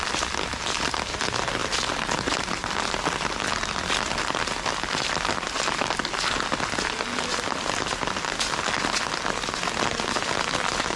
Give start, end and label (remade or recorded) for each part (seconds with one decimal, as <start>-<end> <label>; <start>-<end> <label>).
0.0-11.0 recorded